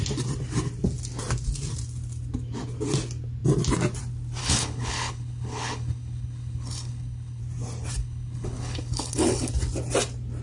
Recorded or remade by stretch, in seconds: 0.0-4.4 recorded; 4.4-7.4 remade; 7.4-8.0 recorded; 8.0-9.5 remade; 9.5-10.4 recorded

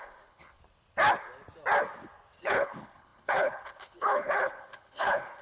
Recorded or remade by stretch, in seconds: 0.0-0.6 remade; 0.6-2.4 recorded; 2.4-5.4 remade

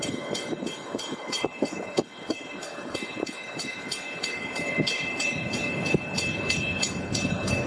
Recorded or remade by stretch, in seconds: 0.0-7.7 remade

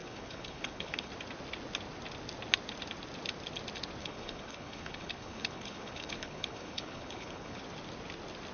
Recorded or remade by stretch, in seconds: 0.0-1.1 remade; 1.1-4.0 recorded; 4.0-7.6 remade; 7.6-8.5 recorded

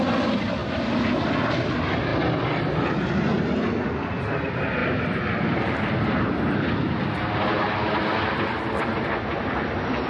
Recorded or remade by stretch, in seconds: 0.0-10.1 recorded

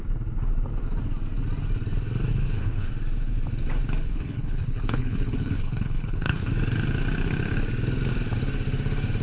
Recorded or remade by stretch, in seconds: 0.0-2.3 recorded; 2.3-2.9 remade; 2.9-4.1 recorded; 4.1-6.5 remade; 6.5-9.2 recorded